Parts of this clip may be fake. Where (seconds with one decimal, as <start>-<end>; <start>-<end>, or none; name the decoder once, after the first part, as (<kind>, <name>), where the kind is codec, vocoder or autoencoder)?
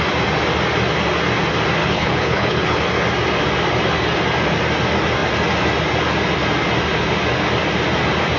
1.8-2.8 (codec, HILCodec)